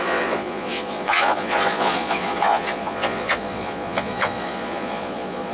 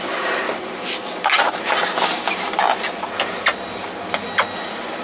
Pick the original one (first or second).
second